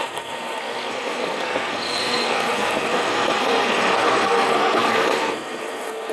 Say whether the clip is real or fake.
fake